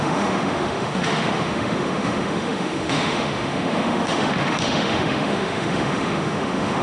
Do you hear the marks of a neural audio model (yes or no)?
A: yes